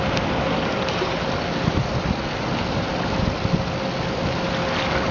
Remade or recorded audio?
recorded